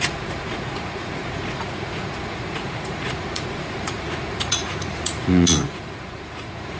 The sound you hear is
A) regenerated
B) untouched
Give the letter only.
A